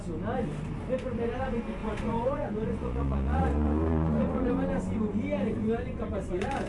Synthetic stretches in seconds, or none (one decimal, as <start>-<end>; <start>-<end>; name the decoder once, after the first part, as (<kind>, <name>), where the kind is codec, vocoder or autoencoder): 1.8-4.5 (vocoder, Vocos); 5.6-6.7